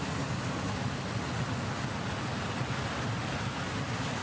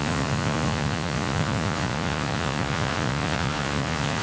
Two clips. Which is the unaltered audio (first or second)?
first